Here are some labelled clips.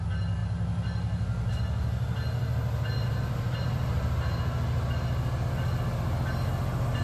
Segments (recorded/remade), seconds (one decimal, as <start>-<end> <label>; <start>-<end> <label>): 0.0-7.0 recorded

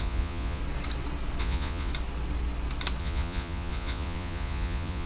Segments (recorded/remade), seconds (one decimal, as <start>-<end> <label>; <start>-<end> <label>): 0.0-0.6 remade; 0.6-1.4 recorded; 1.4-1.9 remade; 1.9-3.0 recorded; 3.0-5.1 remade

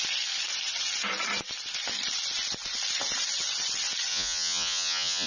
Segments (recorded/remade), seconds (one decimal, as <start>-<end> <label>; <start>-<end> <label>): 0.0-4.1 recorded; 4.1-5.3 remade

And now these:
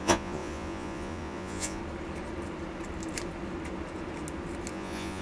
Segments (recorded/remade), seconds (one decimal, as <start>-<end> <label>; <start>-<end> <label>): 0.0-1.8 remade; 1.8-4.7 recorded; 4.7-5.2 remade

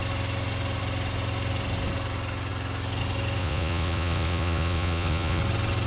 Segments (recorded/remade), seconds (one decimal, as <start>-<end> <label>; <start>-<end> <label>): 0.0-3.4 recorded; 3.4-5.4 remade; 5.4-5.9 recorded

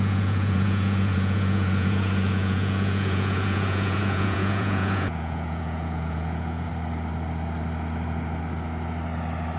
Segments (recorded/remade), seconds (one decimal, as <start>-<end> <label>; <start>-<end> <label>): 0.0-6.7 remade; 6.7-9.6 recorded